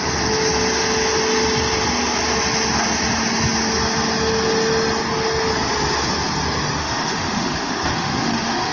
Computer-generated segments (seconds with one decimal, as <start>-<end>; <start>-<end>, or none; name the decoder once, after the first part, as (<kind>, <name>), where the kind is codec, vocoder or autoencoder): 6.8-8.7 (autoencoder, DAC-VAE)